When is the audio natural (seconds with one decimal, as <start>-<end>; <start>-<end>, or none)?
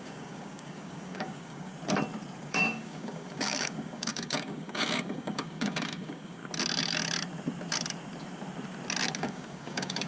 1.7-2.4; 6.4-9.2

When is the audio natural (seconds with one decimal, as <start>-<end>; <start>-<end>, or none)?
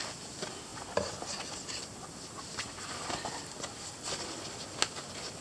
0.0-5.4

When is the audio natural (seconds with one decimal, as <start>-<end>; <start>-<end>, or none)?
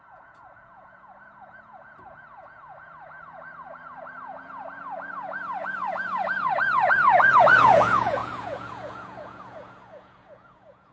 none